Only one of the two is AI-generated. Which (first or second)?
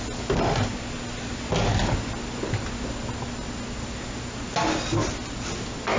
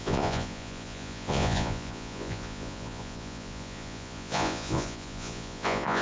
second